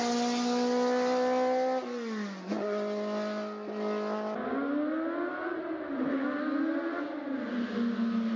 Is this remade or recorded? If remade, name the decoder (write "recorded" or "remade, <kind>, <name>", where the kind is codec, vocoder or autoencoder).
recorded